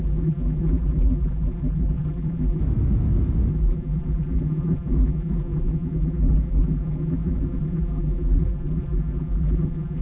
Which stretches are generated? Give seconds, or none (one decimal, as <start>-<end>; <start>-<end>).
0.0-2.6; 3.5-10.0